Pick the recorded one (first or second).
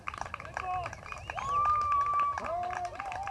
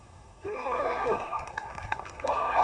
first